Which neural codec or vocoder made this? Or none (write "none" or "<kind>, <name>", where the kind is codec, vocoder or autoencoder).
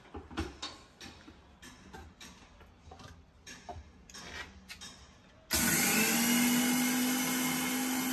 none